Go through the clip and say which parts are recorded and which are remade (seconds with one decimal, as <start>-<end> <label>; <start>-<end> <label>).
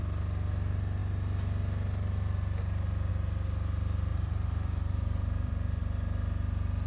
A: 0.0-4.1 recorded; 4.1-5.8 remade; 5.8-6.9 recorded